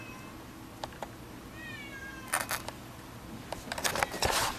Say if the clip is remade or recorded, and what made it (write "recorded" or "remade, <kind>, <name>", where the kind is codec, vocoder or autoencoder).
recorded